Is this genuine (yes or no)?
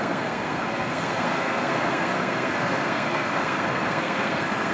no